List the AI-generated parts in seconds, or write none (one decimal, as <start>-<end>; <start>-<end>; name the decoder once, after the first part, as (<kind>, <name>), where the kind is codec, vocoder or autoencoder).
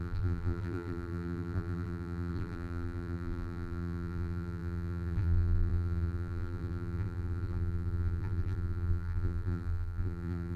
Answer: 0.0-10.6 (vocoder, BigVGAN v2)